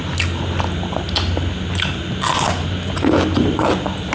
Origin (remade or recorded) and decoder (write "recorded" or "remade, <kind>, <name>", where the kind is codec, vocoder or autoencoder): recorded